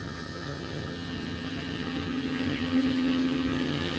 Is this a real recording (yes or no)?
no